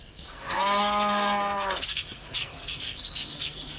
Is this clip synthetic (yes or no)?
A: yes